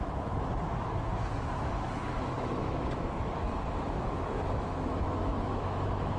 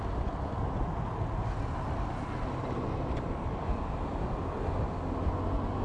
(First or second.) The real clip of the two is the second